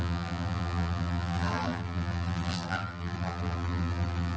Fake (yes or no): yes